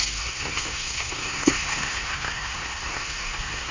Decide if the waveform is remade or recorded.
remade